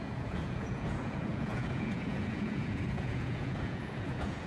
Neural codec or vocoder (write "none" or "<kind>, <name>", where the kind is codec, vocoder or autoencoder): vocoder, Vocos